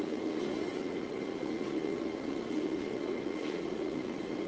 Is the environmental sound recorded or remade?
remade